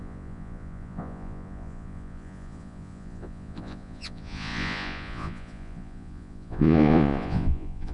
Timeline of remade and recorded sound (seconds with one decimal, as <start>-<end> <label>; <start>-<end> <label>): 0.0-7.9 remade